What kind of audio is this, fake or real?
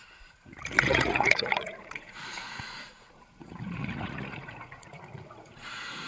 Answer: fake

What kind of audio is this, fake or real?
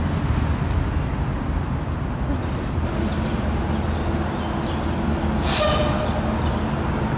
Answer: real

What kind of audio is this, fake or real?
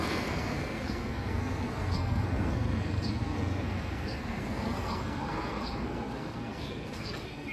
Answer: fake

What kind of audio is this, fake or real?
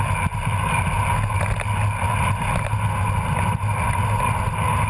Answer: real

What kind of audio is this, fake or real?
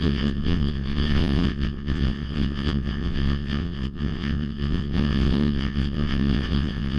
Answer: fake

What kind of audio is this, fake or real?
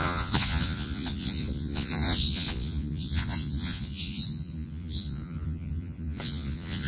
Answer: fake